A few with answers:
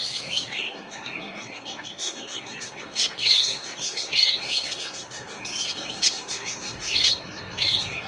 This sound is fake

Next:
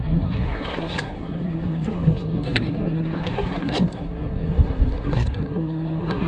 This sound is fake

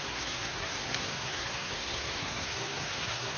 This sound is fake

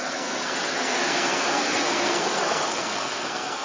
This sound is fake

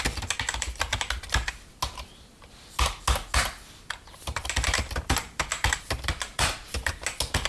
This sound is real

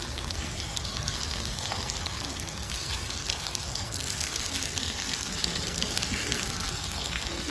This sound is fake